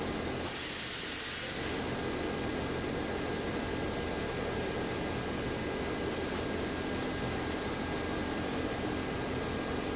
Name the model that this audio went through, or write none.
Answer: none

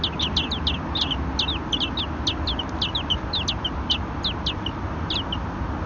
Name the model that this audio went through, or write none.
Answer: none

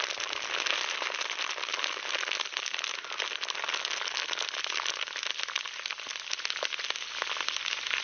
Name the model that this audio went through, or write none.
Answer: none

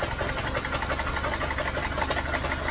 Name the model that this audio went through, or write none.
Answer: none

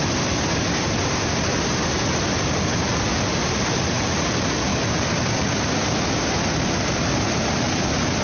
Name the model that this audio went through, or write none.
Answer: none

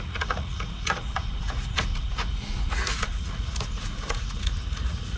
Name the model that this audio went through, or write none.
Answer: vocoder, Vocos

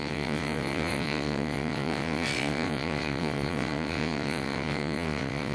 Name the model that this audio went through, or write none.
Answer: vocoder, WaveNeXt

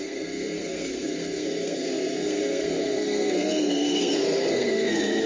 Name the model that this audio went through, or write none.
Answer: codec, SNAC